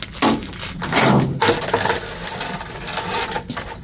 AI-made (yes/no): no